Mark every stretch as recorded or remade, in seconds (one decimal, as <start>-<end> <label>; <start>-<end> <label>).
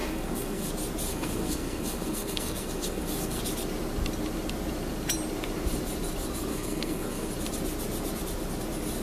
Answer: 0.0-0.7 remade; 0.7-1.1 recorded; 1.1-3.4 remade; 3.4-6.5 recorded; 6.5-7.3 remade; 7.3-9.0 recorded